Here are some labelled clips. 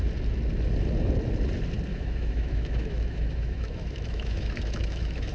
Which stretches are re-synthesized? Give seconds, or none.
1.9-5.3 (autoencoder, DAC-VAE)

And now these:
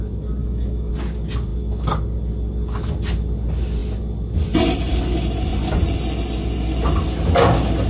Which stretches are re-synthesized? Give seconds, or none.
0.4-0.9 (autoencoder, DAC-VAE)